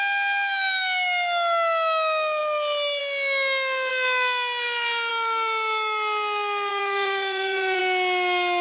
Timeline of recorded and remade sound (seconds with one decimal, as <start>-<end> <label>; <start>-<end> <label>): 0.0-6.7 recorded; 6.7-7.8 remade; 7.8-8.6 recorded